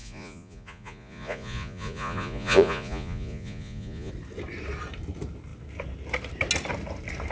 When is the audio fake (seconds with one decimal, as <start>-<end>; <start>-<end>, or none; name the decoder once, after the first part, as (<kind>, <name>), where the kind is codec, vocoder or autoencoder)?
0.0-4.1 (vocoder, Vocos)